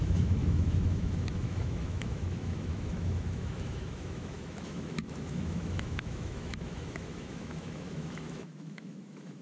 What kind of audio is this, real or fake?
fake